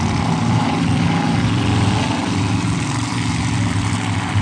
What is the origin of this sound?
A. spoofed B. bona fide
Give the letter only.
A